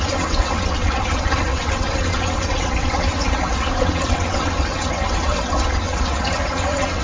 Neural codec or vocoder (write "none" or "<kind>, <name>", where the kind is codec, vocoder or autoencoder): vocoder, WaveNeXt